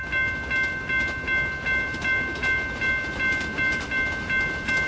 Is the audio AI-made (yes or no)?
no